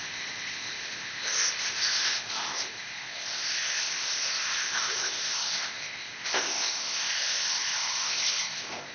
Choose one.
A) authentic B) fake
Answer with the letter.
B